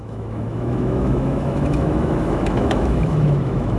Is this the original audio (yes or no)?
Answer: no